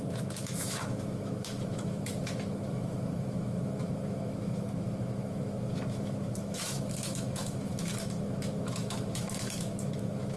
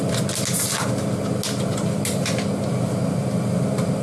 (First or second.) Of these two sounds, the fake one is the first